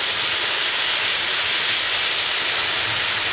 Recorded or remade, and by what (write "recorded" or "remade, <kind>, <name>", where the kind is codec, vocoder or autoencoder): recorded